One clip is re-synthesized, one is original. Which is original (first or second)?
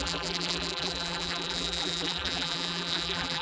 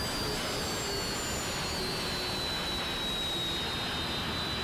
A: second